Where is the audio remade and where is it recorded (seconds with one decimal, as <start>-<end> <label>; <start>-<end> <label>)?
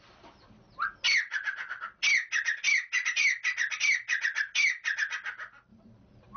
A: 0.0-5.7 recorded; 5.7-6.4 remade